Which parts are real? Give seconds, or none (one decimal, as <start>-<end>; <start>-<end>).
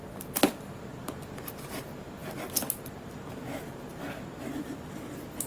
0.0-5.5